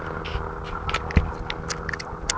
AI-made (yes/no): no